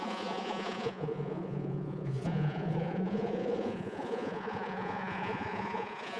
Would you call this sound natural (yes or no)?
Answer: no